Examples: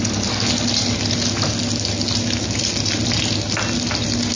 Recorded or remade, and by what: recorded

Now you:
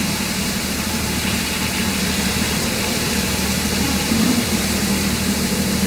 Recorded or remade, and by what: remade, vocoder, BigVGAN v2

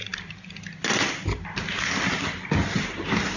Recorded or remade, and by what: recorded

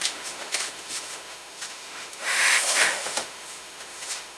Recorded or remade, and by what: remade, autoencoder, DAC-VAE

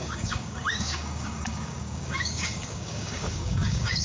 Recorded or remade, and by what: remade, codec, DAC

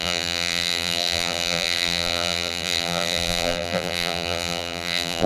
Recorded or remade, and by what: remade, vocoder, BigVGAN v2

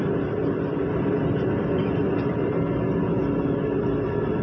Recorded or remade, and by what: recorded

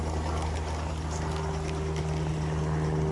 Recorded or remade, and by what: recorded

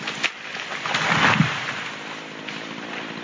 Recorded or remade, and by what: remade, vocoder, BigVGAN v2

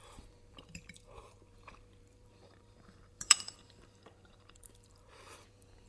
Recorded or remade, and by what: remade, vocoder, BigVGAN v2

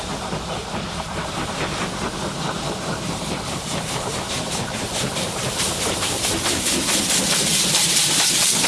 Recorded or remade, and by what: remade, vocoder, BigVGAN v2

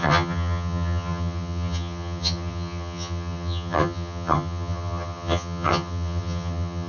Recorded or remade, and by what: remade, vocoder, HiFi-GAN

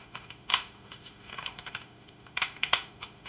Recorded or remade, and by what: remade, autoencoder, DAC-VAE